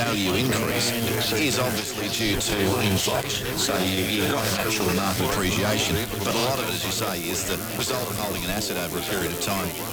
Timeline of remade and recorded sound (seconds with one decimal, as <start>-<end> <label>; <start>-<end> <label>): 0.0-2.5 recorded; 2.5-5.2 remade; 5.2-9.9 recorded